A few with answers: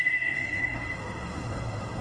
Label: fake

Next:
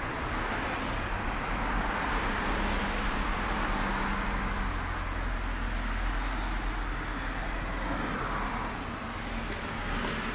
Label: real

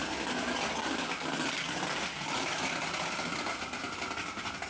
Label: real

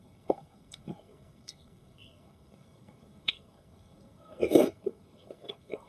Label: fake